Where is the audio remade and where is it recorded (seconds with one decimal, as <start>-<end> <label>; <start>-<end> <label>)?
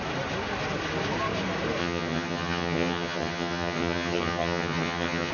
0.0-1.8 recorded; 1.8-5.3 remade